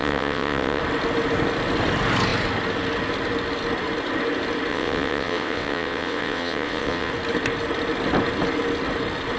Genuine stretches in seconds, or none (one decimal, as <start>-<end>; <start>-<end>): 0.8-4.7; 7.1-9.4